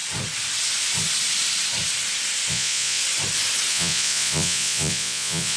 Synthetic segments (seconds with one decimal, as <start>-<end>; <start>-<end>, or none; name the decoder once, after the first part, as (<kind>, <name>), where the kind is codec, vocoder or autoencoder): 2.5-3.0 (vocoder, Vocos); 3.7-5.6

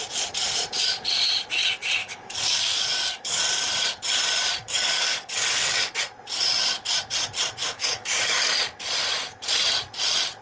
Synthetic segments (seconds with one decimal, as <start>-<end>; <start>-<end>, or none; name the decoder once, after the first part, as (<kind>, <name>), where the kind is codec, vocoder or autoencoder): 2.0-3.4 (codec, DAC); 4.6-5.9; 7.6-8.5

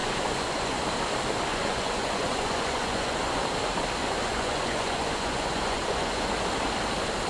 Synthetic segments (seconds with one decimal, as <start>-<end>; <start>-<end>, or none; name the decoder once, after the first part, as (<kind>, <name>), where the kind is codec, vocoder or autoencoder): 0.0-0.8 (vocoder, Vocos); 1.5-3.4; 4.0-6.3

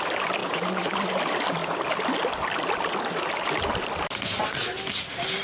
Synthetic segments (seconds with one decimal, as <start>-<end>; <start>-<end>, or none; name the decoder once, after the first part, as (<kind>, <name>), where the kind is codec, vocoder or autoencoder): 0.4-1.2 (vocoder, BigVGAN v2)

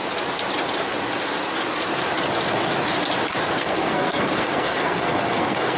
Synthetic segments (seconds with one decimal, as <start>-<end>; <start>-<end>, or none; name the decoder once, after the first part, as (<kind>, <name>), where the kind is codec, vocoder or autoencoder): 3.5-5.8 (codec, SNAC)

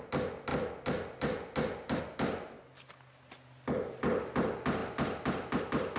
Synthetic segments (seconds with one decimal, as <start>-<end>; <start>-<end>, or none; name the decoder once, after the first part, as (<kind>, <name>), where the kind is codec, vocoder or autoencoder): none